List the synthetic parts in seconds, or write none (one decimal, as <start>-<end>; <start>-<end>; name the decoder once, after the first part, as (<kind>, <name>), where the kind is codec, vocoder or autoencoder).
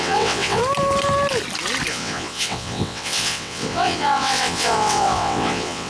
0.0-0.6 (vocoder, WaveNeXt); 1.9-5.9